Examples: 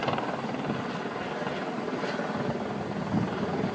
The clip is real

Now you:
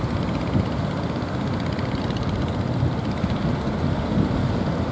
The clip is real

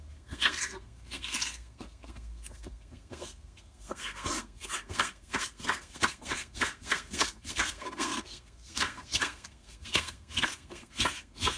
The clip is fake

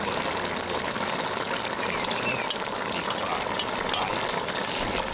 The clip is real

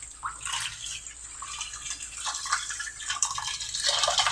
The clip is real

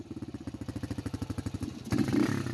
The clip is real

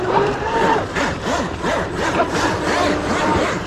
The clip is fake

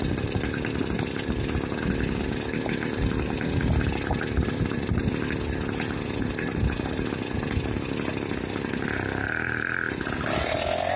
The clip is real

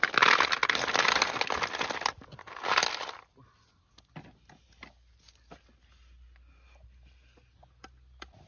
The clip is real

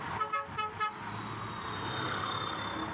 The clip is real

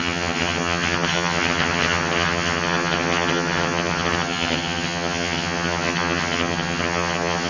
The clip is fake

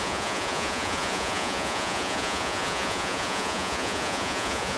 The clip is fake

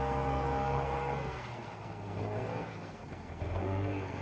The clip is fake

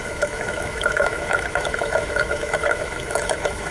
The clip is fake